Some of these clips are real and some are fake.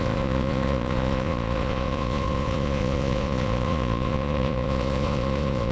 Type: fake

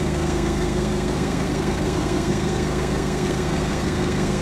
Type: fake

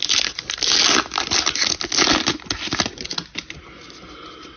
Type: real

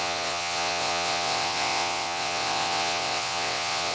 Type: fake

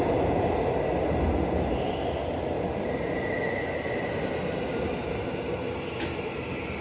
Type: real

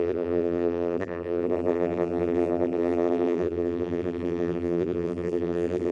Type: fake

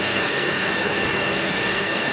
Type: fake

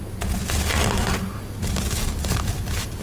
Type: real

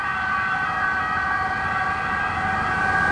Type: real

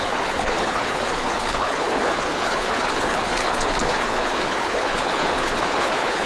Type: fake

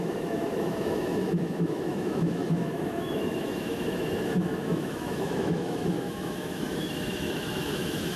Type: fake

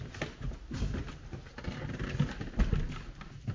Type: real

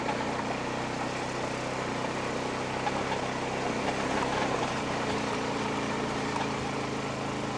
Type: real